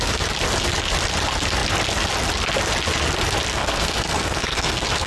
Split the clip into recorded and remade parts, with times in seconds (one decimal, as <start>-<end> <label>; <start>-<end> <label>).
0.0-3.5 recorded; 3.5-5.1 remade